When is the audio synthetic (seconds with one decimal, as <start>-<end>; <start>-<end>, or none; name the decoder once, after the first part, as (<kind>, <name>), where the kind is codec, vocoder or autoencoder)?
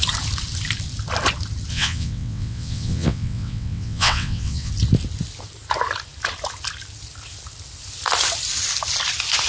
1.7-4.7 (vocoder, WaveNeXt)